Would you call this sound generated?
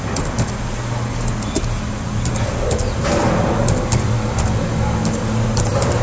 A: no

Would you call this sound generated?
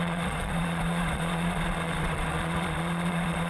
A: yes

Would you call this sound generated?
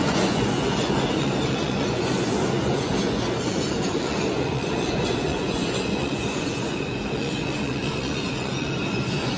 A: yes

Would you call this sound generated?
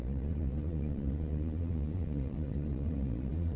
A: yes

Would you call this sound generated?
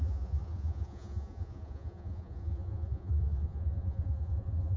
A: yes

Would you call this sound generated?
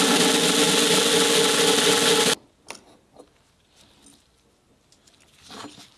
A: no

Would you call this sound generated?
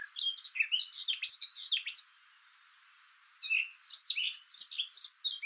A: no